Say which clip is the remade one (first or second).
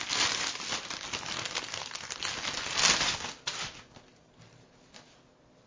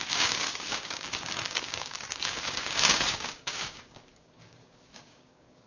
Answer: second